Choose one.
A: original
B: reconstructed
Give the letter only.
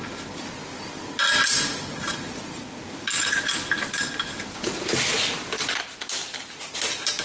A